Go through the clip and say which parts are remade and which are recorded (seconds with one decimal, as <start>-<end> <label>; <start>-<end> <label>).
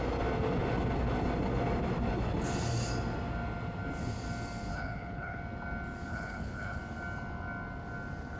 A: 0.0-4.7 recorded; 4.7-5.4 remade; 5.4-6.1 recorded; 6.1-6.8 remade; 6.8-8.4 recorded